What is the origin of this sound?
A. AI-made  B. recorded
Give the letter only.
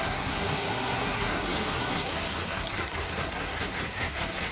A